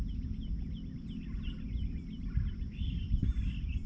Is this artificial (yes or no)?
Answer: no